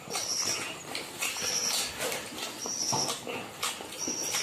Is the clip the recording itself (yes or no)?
yes